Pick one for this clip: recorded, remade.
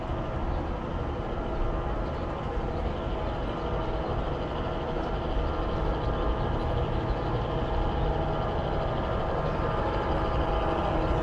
recorded